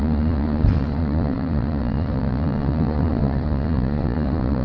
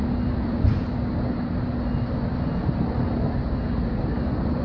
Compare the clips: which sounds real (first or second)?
second